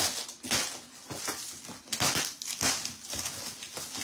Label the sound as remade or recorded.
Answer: recorded